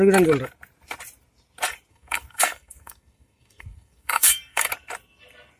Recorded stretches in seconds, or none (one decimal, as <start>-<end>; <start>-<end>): 0.0-1.9; 4.7-5.6